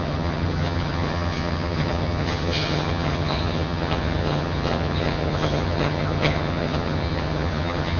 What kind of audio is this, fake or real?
fake